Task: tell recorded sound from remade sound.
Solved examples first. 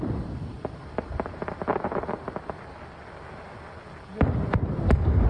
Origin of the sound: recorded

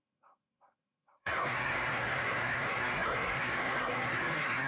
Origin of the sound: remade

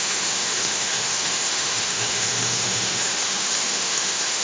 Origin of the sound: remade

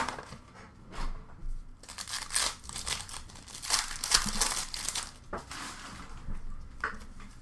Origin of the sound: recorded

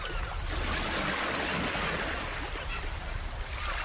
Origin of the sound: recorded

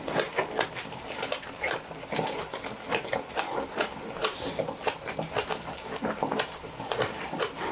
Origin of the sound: recorded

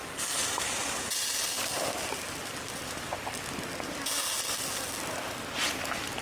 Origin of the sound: recorded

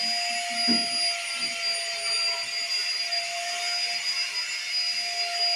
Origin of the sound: recorded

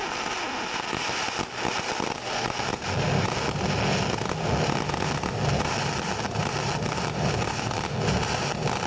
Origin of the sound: recorded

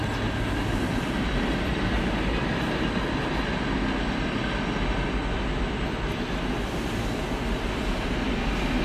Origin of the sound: recorded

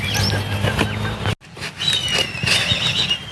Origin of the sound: recorded